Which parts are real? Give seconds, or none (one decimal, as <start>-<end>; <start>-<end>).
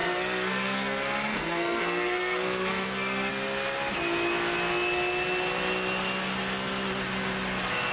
3.3-7.9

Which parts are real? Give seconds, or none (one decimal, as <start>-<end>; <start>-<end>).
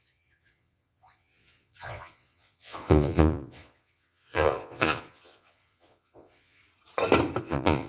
6.6-7.4